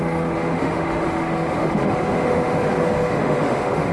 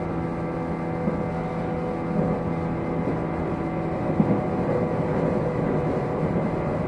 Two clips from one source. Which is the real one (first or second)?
second